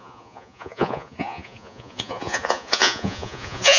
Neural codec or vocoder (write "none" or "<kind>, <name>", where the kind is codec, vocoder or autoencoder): vocoder, Vocos